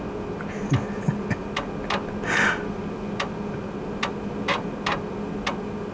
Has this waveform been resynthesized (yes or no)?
no